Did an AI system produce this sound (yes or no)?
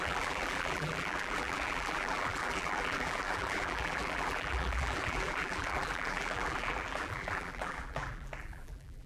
yes